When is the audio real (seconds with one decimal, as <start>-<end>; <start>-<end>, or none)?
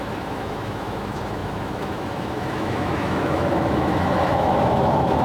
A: none